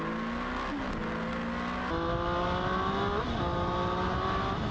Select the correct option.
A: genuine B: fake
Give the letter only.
A